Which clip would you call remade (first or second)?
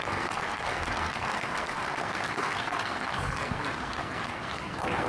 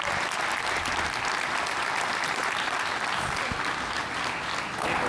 first